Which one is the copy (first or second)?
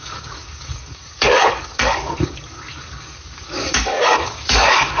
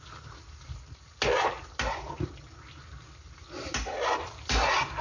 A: first